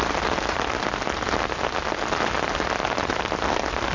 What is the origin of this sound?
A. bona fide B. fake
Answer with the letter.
A